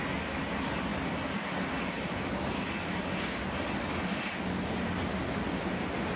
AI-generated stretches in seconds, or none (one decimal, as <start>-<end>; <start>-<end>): none